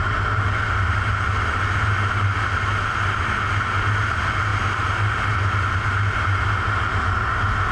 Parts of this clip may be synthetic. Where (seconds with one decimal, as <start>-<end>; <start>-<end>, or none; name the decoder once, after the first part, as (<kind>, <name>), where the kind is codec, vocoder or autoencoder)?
none